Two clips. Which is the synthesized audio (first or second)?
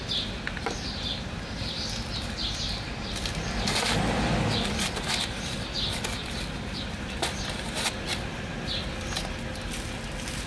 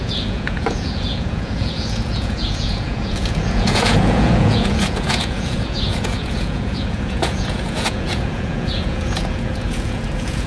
second